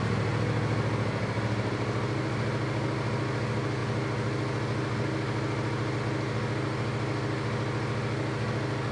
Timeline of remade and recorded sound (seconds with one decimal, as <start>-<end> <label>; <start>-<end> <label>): 0.0-8.9 recorded